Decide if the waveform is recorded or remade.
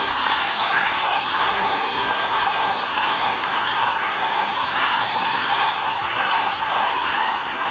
remade